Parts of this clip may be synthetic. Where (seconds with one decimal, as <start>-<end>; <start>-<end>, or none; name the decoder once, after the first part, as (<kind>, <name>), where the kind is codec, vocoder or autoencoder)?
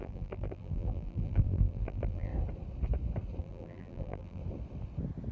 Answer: 0.0-2.3 (vocoder, BigVGAN v2); 3.4-4.4